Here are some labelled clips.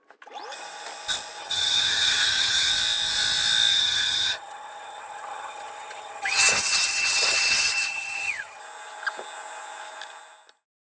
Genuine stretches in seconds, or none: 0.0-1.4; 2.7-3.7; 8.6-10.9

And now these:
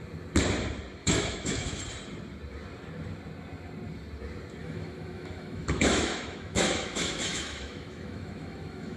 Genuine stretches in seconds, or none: 0.0-1.0; 1.8-4.6

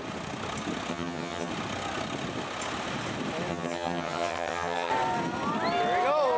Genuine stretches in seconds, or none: 0.0-0.9; 1.5-3.5; 4.9-6.4

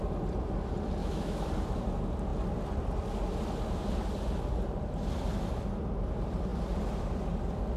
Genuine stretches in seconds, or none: 0.0-1.0; 1.5-7.8

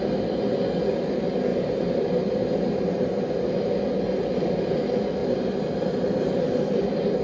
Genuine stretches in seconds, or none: 0.0-1.5; 3.2-5.2; 6.3-7.2

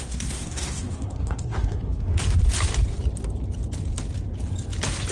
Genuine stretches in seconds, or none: 2.1-5.1

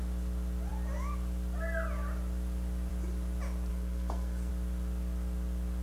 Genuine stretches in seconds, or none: 0.0-3.7; 4.5-5.8